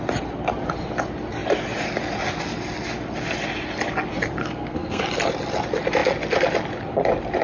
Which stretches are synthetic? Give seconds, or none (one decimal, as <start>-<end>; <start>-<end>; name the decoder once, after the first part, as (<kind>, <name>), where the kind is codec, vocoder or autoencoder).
4.4-5.0 (codec, SNAC)